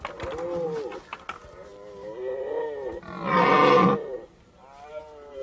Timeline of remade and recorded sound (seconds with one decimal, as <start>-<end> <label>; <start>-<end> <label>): 0.0-5.4 recorded